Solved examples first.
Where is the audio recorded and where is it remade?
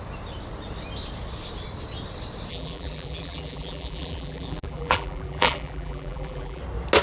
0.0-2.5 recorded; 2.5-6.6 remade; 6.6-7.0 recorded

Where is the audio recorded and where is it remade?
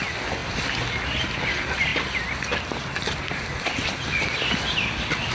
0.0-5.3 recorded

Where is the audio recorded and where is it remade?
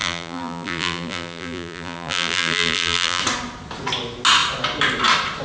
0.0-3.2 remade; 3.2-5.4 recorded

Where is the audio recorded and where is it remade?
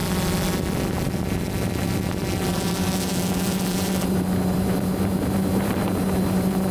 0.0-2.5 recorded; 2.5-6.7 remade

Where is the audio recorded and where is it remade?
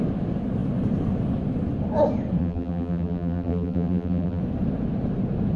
0.0-2.4 recorded; 2.4-4.4 remade; 4.4-5.6 recorded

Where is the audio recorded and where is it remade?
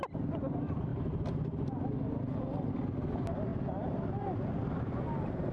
0.0-5.5 recorded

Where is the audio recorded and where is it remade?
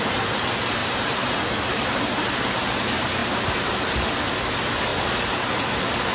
0.0-0.8 recorded; 0.8-2.4 remade; 2.4-3.2 recorded; 3.2-3.7 remade; 3.7-6.1 recorded